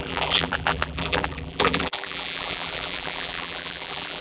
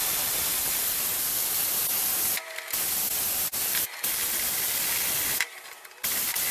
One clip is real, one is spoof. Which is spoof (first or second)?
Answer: first